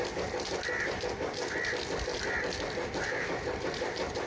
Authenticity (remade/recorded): recorded